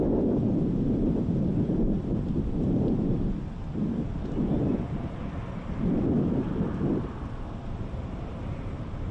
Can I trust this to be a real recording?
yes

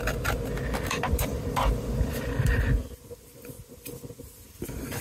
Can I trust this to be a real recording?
yes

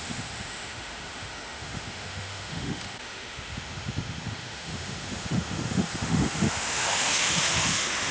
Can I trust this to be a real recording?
no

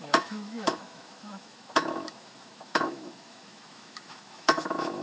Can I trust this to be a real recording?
no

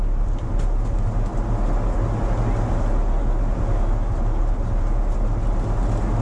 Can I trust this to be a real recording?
yes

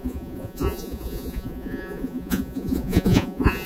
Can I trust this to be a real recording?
no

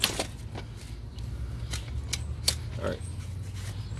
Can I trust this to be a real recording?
yes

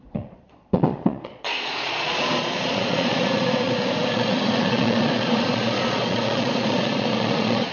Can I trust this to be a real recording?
no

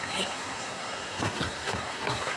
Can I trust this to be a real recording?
no